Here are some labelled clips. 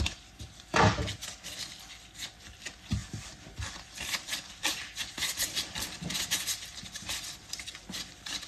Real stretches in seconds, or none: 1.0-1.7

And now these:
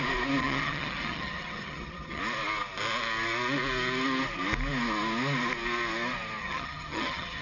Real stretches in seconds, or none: 0.0-0.4; 2.2-6.4